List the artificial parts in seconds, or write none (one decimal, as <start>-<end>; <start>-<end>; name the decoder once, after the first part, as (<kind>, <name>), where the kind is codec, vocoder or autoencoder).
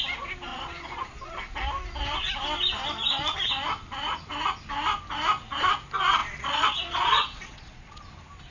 0.5-1.3 (vocoder, Vocos); 6.2-8.0